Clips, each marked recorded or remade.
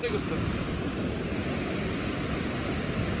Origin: recorded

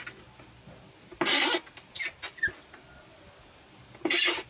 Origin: recorded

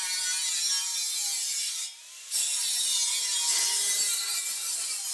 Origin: recorded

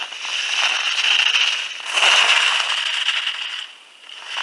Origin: recorded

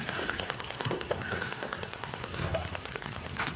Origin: remade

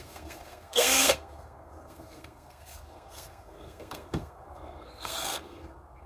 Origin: remade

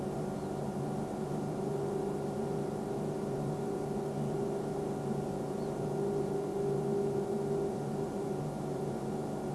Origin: recorded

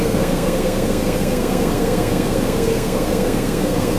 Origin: remade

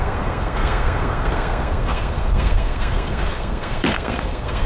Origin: remade